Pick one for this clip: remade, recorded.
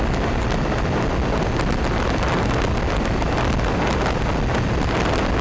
recorded